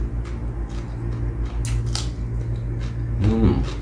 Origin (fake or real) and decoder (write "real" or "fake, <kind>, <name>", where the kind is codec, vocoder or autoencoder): real